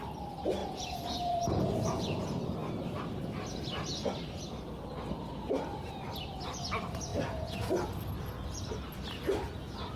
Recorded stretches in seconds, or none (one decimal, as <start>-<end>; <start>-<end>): 0.0-0.6; 2.2-7.1; 7.7-10.0